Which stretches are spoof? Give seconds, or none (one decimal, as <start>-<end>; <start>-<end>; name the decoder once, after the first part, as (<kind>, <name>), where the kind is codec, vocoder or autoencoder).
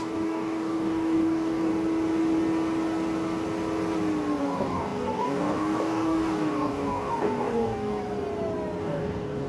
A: 0.0-1.7 (codec, DAC); 4.4-8.0; 8.8-9.5